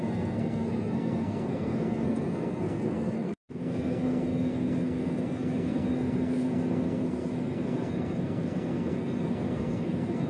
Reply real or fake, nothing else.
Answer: fake